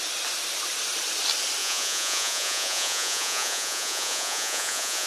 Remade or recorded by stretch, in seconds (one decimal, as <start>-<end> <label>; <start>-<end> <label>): 0.0-1.6 recorded; 1.6-5.1 remade